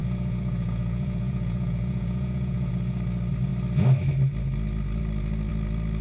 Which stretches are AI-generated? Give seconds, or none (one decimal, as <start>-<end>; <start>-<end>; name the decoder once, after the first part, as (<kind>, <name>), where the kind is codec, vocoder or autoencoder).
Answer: 0.0-2.7 (vocoder, Vocos)